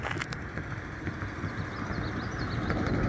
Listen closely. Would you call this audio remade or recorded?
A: recorded